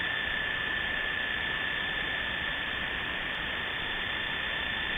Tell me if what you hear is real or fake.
fake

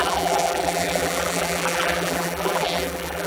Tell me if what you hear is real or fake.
fake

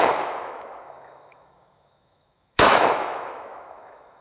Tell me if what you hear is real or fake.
fake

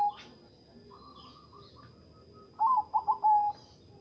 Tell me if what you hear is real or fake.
real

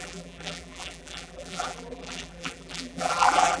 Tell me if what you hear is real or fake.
fake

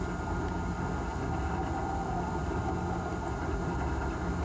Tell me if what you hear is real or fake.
real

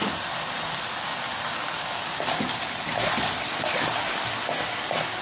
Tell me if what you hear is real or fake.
real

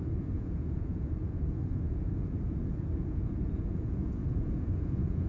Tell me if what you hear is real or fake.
fake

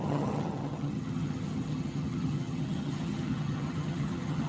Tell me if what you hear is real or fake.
fake